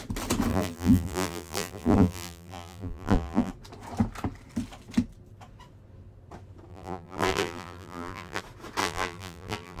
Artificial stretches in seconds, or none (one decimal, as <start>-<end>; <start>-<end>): 0.5-3.5; 6.7-8.4; 8.8-9.8

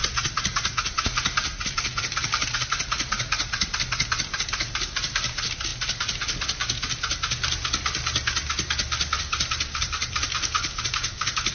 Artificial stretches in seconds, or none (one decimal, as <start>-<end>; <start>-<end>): 0.0-5.7; 9.2-11.5

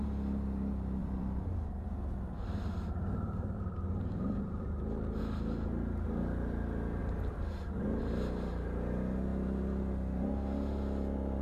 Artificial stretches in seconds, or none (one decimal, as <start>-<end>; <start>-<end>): 1.0-5.2; 7.0-8.0

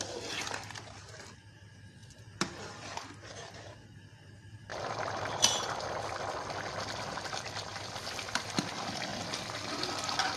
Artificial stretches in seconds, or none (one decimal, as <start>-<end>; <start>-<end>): none

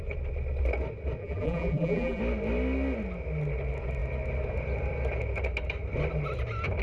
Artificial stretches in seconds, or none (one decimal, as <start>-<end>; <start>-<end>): 1.2-2.2